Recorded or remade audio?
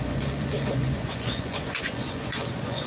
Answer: remade